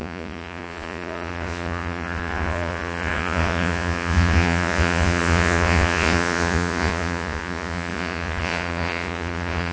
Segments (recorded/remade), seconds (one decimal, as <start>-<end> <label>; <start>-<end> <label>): 0.0-9.7 remade